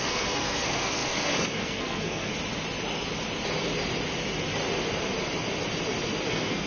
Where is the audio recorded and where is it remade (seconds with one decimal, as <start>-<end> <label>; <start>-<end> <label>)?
0.0-2.3 remade; 2.3-6.3 recorded; 6.3-6.7 remade

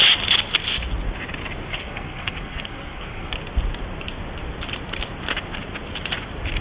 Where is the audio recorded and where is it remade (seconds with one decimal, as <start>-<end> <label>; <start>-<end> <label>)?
0.0-1.7 recorded; 1.7-3.3 remade; 3.3-6.6 recorded